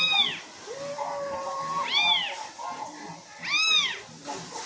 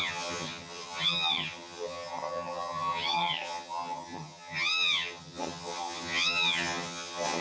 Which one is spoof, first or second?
second